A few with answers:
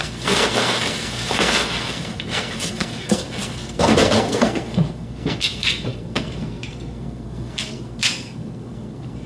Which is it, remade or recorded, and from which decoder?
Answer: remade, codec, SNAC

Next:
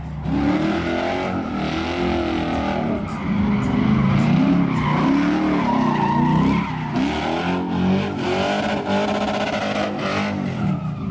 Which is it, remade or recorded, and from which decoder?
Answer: recorded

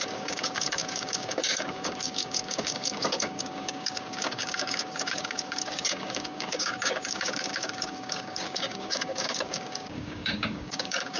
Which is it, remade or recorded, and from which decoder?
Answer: remade, codec, DAC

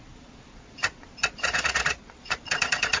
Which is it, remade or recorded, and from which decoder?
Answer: remade, vocoder, Vocos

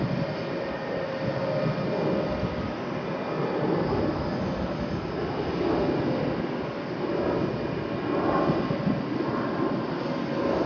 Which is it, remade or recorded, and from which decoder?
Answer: recorded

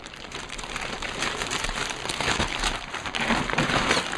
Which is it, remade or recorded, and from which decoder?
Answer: remade, vocoder, BigVGAN v2